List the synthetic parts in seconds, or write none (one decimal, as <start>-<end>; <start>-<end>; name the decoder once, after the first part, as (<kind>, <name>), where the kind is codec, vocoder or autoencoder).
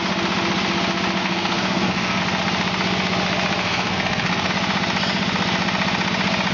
1.2-2.2 (codec, SNAC); 3.6-4.5